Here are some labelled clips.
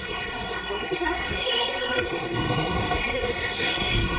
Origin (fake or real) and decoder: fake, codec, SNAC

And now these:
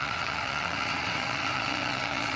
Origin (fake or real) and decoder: fake, vocoder, WaveNeXt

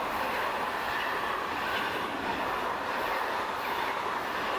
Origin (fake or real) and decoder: fake, vocoder, BigVGAN v2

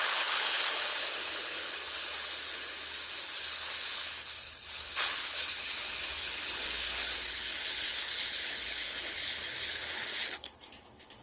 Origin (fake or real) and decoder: fake, codec, HILCodec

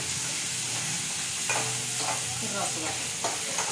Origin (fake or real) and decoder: real